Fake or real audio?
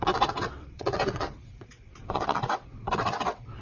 fake